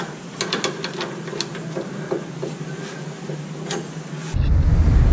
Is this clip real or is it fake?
real